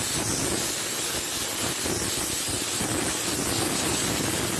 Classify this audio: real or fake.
real